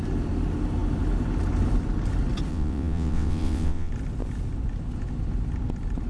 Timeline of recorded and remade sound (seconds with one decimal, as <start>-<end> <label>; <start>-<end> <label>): 0.0-2.5 recorded; 2.5-3.9 remade; 3.9-6.1 recorded